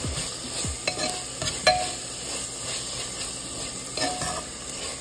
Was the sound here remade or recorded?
recorded